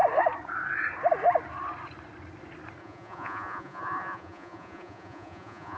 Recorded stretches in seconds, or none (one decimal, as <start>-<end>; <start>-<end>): 0.0-2.8